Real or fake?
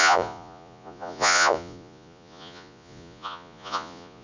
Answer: fake